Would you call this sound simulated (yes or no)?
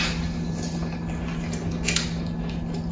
no